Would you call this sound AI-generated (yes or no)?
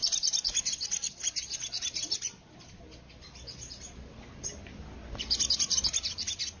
no